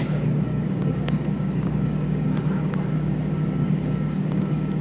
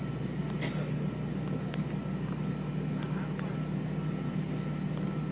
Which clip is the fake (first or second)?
first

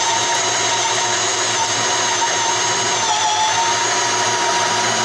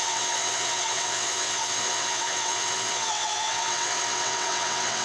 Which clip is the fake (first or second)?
second